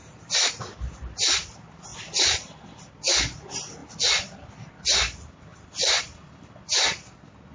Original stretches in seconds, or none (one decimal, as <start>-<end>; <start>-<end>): 0.6-1.9; 2.8-3.8; 4.5-5.5; 6.4-7.5